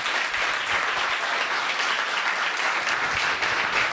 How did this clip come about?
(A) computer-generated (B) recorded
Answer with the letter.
B